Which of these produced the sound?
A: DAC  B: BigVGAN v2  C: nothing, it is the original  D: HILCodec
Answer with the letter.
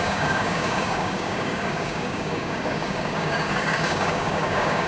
A